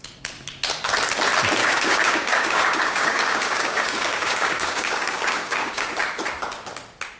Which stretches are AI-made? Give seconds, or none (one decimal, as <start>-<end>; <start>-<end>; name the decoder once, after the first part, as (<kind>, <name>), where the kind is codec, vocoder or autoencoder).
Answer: 1.6-5.9 (codec, DAC)